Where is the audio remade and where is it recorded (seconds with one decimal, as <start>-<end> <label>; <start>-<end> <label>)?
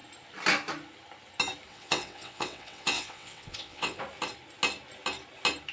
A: 0.0-1.7 recorded; 1.7-4.0 remade; 4.0-5.7 recorded